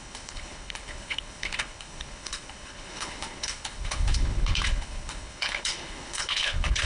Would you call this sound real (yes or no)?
no